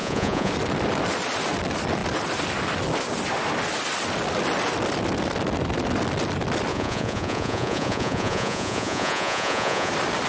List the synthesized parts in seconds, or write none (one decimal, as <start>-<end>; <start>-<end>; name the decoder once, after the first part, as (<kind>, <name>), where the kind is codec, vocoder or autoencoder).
0.0-0.5 (vocoder, Vocos); 6.7-9.9